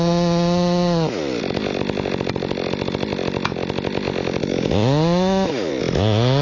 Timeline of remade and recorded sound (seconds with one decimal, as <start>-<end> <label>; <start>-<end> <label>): 0.0-6.4 recorded